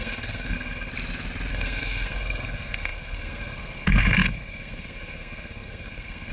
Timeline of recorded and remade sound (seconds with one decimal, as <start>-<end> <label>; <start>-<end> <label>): 0.0-0.9 remade; 0.9-1.5 recorded; 1.5-6.3 remade